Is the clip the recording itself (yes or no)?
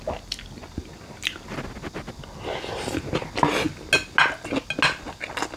yes